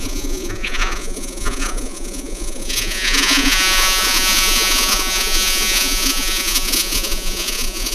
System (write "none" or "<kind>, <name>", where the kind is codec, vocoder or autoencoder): vocoder, Vocos